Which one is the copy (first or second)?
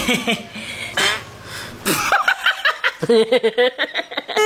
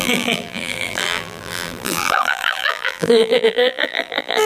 second